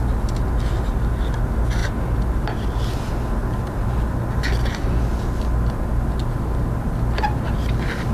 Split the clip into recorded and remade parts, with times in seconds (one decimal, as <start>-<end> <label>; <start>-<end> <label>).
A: 0.0-8.1 recorded